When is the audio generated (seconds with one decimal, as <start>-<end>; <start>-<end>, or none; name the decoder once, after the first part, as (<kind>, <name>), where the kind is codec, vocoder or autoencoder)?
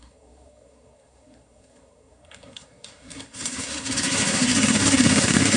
0.0-5.6 (codec, SNAC)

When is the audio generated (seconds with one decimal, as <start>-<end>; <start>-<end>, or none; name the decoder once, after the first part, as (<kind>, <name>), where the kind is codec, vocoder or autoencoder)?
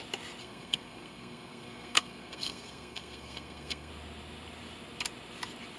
0.4-3.9 (codec, SNAC)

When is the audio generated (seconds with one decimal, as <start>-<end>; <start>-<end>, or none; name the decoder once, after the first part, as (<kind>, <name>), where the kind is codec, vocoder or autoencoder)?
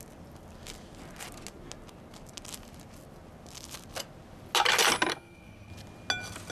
5.1-5.7 (codec, SNAC)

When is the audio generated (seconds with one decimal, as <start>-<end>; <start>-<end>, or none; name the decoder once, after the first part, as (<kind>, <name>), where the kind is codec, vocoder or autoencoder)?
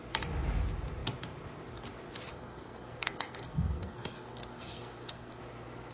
2.3-5.4 (codec, SNAC)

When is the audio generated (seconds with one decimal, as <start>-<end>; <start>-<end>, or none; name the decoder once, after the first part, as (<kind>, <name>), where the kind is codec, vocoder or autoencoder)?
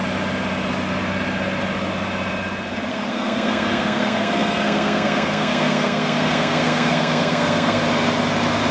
2.9-7.8 (codec, SNAC)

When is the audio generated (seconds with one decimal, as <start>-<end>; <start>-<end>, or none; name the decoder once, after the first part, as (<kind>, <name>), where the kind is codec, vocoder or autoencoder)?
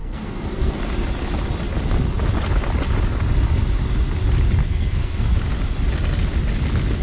0.0-0.8 (codec, SNAC); 4.6-5.3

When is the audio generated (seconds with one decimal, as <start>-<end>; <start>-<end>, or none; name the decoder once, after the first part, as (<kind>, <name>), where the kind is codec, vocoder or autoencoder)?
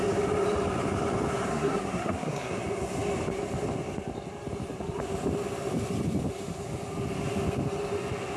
1.5-2.5 (codec, SNAC)